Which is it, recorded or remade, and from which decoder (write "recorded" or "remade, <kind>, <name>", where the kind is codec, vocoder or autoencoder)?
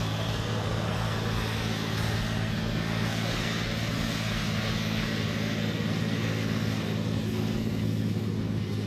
remade, codec, SNAC